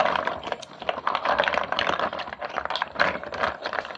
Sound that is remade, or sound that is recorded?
remade